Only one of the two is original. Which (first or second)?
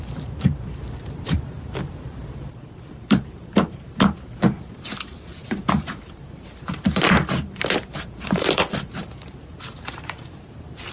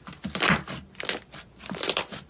second